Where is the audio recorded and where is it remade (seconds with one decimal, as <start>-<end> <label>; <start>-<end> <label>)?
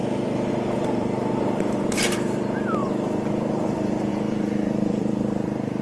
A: 0.0-0.5 recorded; 0.5-5.8 remade